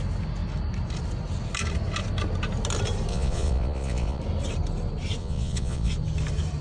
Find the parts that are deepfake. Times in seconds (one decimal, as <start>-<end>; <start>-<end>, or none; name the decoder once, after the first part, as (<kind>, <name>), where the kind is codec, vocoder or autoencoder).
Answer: 3.1-4.2 (vocoder, Vocos); 5.2-5.9